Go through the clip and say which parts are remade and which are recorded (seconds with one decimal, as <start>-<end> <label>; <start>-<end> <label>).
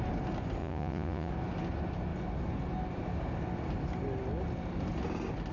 0.0-0.6 recorded; 0.6-1.3 remade; 1.3-5.5 recorded